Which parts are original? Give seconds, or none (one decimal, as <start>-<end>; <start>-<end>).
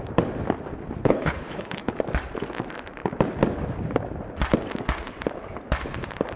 0.0-1.0; 1.9-6.4